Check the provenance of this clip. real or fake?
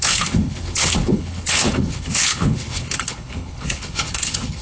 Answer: fake